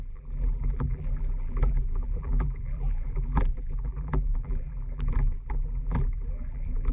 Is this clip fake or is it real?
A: fake